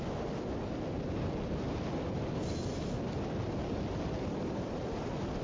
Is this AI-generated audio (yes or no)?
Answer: no